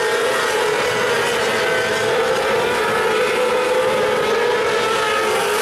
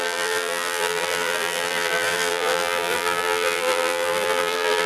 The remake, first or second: second